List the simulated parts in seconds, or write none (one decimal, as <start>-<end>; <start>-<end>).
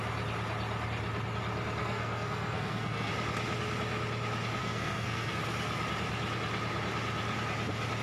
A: 1.8-3.1; 4.6-5.4